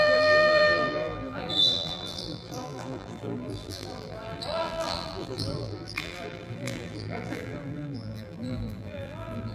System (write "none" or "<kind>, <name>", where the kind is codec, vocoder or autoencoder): vocoder, BigVGAN v2